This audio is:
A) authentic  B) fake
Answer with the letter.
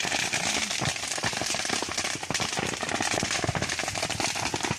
B